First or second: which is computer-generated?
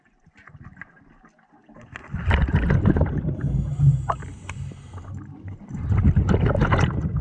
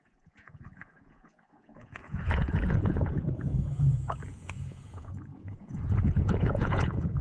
second